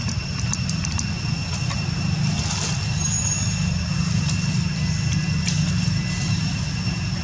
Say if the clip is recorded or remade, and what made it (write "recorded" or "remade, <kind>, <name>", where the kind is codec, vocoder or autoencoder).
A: recorded